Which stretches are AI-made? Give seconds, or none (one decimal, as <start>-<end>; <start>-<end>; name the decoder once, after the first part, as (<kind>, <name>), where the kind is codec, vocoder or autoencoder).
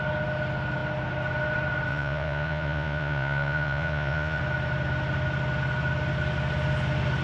1.9-4.4 (vocoder, Vocos)